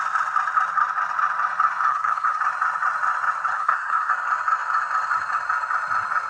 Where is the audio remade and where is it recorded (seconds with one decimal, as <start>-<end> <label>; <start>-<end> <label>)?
0.0-1.9 recorded; 1.9-2.4 remade; 2.4-3.5 recorded; 3.5-4.1 remade; 4.1-6.3 recorded